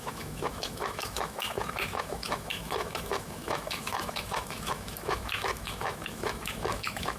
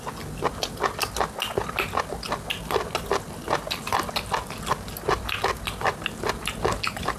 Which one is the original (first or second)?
second